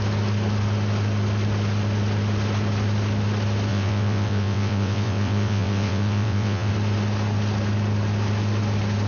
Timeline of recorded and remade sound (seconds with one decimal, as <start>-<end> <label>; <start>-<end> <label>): 0.0-3.7 recorded; 3.7-6.7 remade; 6.7-9.1 recorded